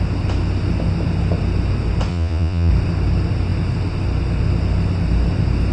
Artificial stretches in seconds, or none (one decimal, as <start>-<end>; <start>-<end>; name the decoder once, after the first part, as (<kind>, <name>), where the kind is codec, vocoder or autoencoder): 2.1-2.7 (vocoder, Vocos)